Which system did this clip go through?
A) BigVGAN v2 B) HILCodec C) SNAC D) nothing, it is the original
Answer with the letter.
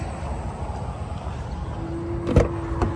D